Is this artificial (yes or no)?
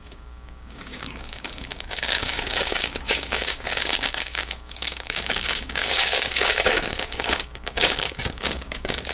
yes